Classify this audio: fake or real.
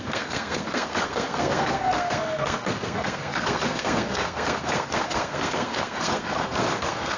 fake